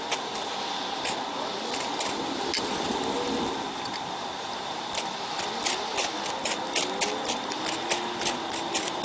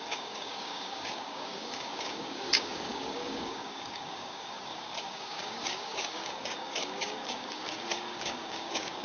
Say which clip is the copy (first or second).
second